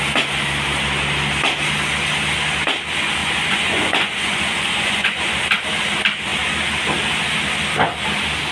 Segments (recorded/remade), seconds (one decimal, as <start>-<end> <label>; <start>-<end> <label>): 0.0-3.2 recorded; 3.2-5.4 remade; 5.4-8.5 recorded